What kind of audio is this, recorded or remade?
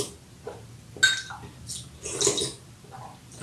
recorded